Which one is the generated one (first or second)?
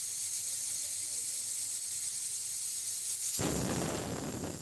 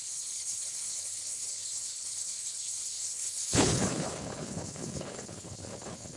second